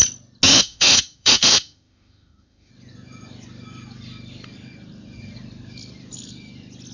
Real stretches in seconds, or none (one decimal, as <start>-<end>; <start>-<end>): 0.0-0.5; 2.7-6.9